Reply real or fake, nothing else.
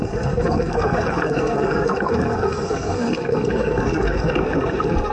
fake